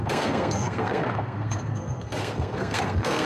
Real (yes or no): no